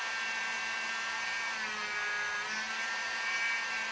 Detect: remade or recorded recorded